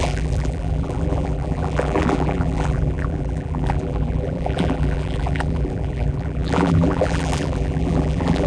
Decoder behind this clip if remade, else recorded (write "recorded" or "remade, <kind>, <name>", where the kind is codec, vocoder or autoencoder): remade, vocoder, BigVGAN v2